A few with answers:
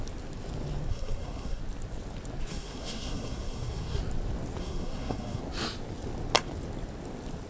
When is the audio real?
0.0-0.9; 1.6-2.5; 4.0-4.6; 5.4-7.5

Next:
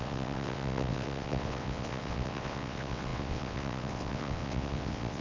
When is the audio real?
none

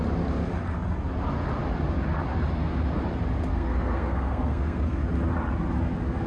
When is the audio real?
0.0-3.5; 5.0-6.3

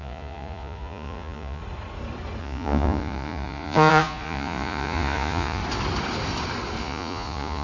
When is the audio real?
1.6-2.4; 5.6-6.8

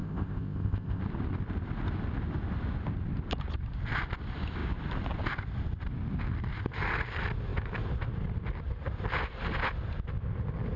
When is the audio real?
1.0-10.8

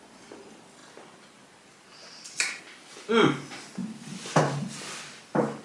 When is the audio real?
0.0-5.6

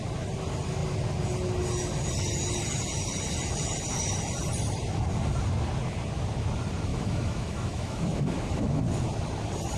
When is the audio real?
0.0-6.9; 8.8-9.8